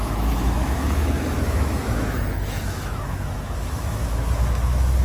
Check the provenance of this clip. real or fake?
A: fake